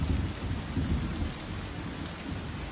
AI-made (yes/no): no